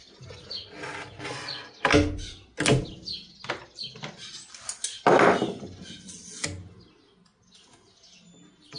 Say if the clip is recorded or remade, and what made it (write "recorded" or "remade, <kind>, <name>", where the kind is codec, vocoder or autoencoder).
recorded